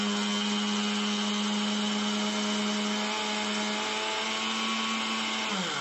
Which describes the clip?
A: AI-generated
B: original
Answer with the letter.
B